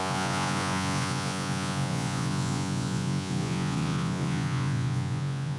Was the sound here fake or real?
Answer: fake